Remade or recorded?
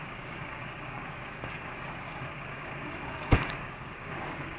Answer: remade